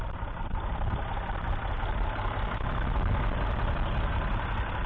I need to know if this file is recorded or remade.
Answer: recorded